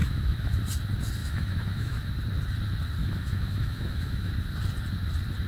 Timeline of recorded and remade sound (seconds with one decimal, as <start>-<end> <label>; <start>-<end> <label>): 0.0-0.6 remade; 0.6-1.2 recorded; 1.2-2.1 remade; 2.1-3.0 recorded; 3.0-4.3 remade; 4.3-5.5 recorded

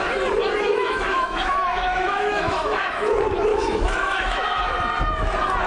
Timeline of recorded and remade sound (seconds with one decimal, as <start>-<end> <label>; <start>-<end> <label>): 0.0-0.7 recorded; 0.7-3.1 remade; 3.1-3.5 recorded; 3.5-4.6 remade; 4.6-5.7 recorded

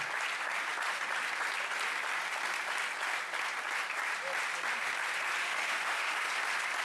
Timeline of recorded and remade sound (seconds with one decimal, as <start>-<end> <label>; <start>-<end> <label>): 0.0-5.4 recorded; 5.4-6.3 remade; 6.3-6.8 recorded

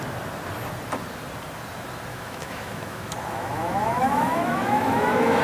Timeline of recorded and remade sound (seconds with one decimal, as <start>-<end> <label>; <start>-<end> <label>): 0.0-2.1 recorded; 2.1-5.4 remade

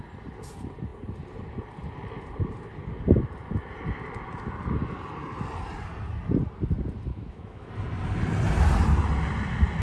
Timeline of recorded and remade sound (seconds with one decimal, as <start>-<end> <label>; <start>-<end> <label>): 0.0-7.1 recorded; 7.1-7.7 remade; 7.7-9.8 recorded

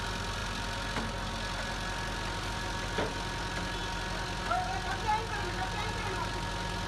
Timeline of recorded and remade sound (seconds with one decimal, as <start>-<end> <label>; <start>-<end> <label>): 0.0-6.9 recorded

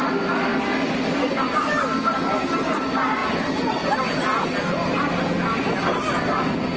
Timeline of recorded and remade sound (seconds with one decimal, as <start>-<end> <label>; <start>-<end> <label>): 0.0-6.8 recorded